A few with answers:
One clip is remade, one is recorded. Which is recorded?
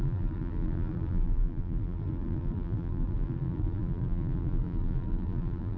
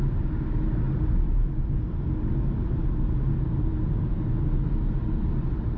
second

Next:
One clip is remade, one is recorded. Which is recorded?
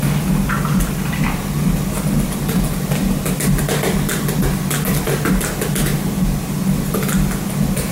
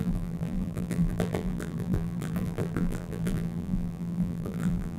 first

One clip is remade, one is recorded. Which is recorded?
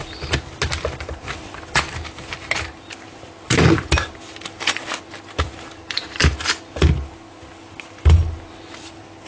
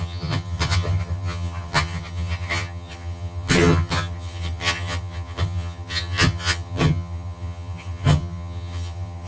first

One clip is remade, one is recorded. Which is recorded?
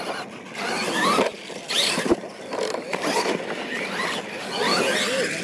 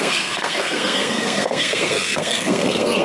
first